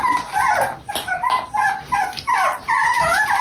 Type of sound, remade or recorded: recorded